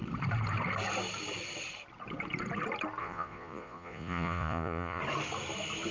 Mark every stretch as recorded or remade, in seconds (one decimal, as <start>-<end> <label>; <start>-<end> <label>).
0.0-3.0 recorded; 3.0-5.0 remade; 5.0-5.9 recorded